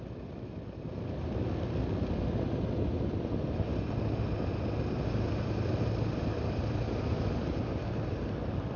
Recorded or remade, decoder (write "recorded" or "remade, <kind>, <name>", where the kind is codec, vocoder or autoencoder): recorded